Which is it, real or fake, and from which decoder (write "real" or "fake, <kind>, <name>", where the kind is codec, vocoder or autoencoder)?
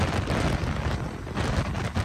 real